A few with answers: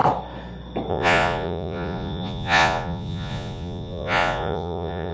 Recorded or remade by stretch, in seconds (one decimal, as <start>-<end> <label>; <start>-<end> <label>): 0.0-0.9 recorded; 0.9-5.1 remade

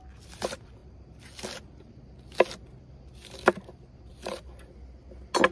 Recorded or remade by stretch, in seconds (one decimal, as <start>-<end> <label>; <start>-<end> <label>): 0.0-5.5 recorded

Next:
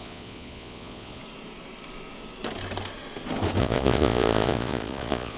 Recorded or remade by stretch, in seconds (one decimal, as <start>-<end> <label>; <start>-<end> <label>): 0.0-1.2 remade; 1.2-3.6 recorded; 3.6-5.4 remade